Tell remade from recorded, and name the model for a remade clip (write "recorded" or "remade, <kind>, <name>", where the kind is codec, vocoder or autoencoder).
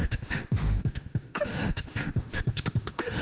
remade, autoencoder, DAC-VAE